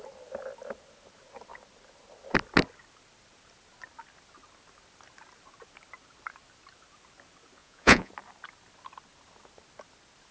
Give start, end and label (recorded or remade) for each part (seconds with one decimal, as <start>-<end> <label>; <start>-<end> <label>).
0.0-7.6 recorded; 7.6-8.1 remade; 8.1-10.3 recorded